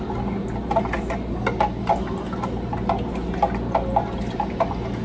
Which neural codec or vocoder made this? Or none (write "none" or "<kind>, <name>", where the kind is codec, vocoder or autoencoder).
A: none